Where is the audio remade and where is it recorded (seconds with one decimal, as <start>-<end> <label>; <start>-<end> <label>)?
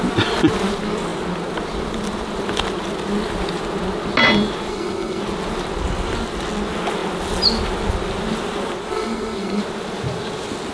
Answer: 0.0-4.7 recorded; 4.7-5.2 remade; 5.2-8.9 recorded; 8.9-9.6 remade; 9.6-10.7 recorded